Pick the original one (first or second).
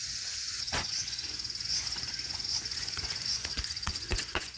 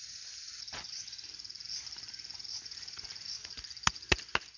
second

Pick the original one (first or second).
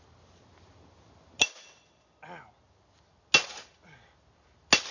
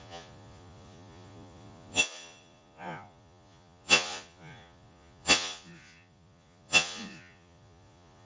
first